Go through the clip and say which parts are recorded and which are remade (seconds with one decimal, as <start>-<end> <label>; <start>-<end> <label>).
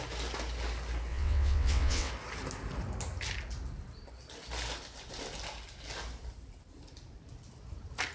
0.0-1.1 recorded; 1.1-2.1 remade; 2.1-8.1 recorded